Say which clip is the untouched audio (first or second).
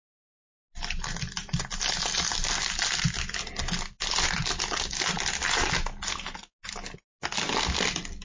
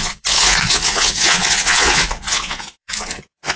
first